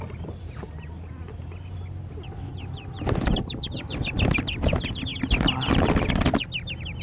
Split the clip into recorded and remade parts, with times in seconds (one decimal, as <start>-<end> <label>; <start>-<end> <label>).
0.0-7.0 recorded